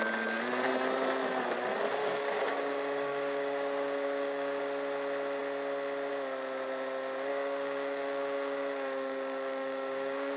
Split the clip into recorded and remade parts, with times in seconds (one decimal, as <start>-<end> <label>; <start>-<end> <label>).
0.0-2.0 recorded; 2.0-4.6 remade; 4.6-7.3 recorded; 7.3-10.4 remade